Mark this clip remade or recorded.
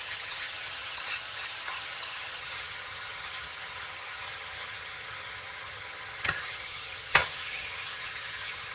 remade